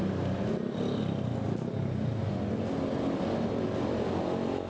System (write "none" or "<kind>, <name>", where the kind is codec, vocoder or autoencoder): none